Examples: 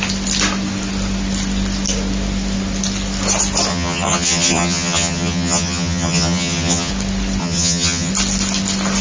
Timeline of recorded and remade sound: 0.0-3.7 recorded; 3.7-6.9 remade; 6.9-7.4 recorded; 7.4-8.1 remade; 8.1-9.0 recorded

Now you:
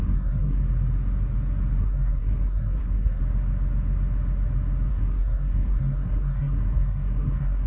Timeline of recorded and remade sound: 0.0-0.6 remade; 0.6-1.8 recorded; 1.8-3.2 remade; 3.2-4.9 recorded; 4.9-7.7 remade

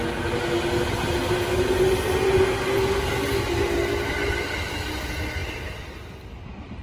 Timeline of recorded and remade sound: 0.0-6.8 recorded

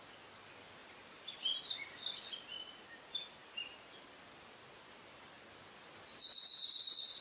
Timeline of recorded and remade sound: 0.0-7.2 recorded

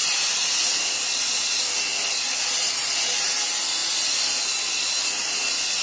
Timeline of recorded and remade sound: 0.0-5.8 recorded